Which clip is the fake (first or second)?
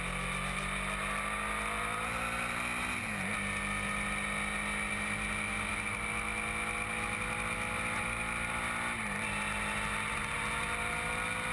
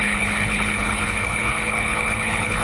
second